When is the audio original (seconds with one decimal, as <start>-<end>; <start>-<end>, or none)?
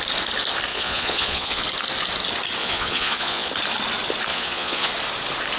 0.0-0.7; 1.6-2.6; 3.5-4.3; 4.9-5.6